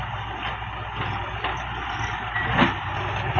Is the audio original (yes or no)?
yes